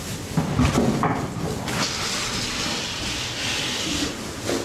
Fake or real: real